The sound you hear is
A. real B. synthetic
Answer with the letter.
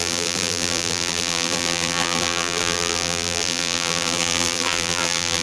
B